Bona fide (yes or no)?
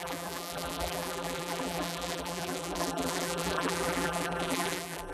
no